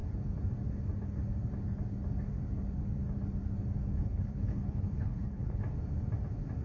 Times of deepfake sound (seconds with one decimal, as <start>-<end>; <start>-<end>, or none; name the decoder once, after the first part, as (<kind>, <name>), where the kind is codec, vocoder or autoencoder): 4.0-5.6 (codec, HILCodec)